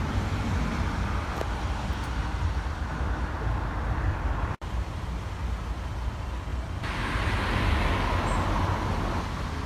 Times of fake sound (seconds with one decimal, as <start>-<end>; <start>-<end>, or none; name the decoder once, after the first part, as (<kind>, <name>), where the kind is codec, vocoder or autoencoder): 4.1-5.2 (vocoder, BigVGAN v2)